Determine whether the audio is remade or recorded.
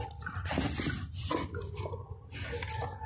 recorded